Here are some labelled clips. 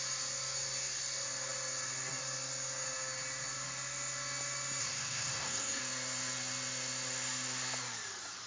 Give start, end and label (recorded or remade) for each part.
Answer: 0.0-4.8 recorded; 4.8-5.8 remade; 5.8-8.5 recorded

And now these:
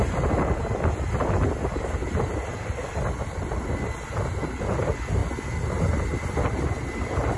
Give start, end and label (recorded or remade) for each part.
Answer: 0.0-7.4 recorded

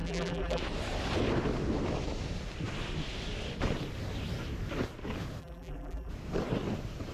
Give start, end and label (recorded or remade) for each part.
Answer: 0.0-0.6 remade; 0.6-5.4 recorded; 5.4-6.1 remade; 6.1-7.1 recorded